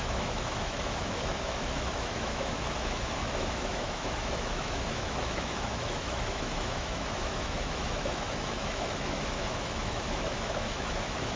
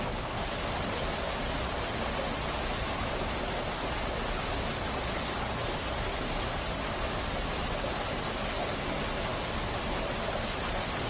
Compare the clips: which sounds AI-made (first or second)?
first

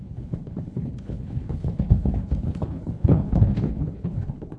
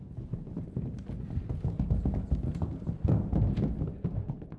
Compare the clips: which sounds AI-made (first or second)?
first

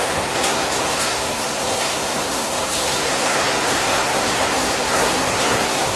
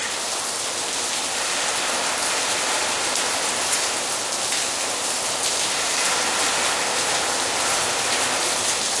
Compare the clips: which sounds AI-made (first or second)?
first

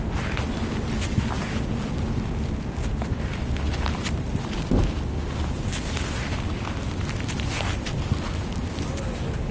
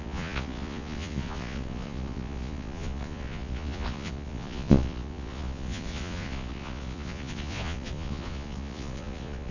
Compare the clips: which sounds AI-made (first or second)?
second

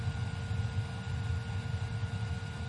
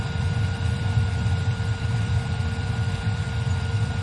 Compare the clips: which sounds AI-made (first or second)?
second